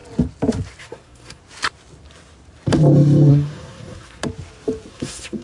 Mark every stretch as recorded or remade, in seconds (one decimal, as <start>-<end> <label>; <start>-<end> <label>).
0.0-0.8 recorded; 0.8-1.4 remade; 1.4-3.3 recorded; 3.3-4.2 remade; 4.2-4.9 recorded; 4.9-5.4 remade

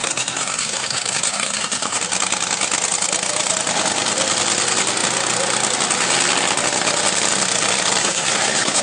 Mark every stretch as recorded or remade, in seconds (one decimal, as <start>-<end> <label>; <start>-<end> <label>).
0.0-2.0 remade; 2.0-8.0 recorded; 8.0-8.8 remade

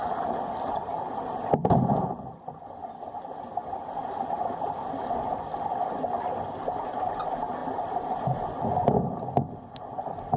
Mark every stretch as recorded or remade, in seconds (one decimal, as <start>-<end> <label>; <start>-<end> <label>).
0.0-10.4 recorded

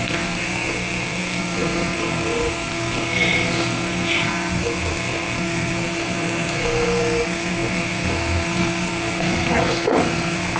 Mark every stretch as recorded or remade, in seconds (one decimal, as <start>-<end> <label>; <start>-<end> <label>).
0.0-10.6 remade

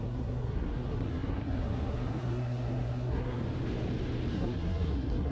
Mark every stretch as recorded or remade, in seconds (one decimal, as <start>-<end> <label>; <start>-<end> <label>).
0.0-3.4 remade; 3.4-4.3 recorded; 4.3-5.3 remade

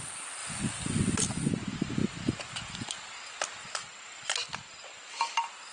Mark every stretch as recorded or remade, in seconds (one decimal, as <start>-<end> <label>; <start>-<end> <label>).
0.0-5.7 recorded

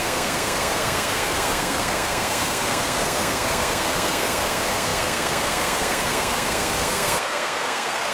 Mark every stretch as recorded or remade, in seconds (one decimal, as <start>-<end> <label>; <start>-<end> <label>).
0.0-8.1 remade